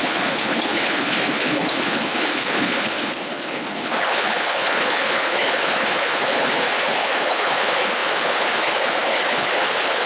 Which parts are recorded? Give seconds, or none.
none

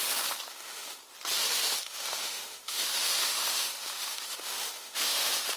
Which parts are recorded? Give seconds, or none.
0.0-0.5; 1.0-1.5

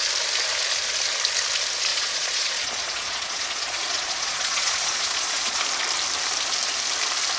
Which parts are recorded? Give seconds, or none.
0.0-1.9; 5.6-7.4